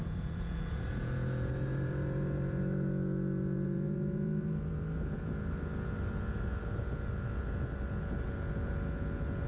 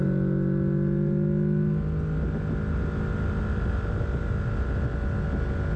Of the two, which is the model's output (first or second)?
first